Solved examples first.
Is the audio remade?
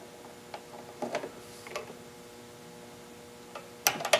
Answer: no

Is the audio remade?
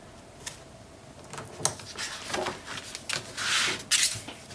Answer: no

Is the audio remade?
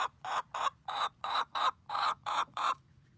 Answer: yes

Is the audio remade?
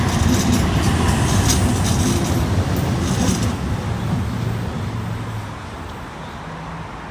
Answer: no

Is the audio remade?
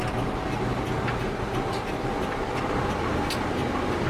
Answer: no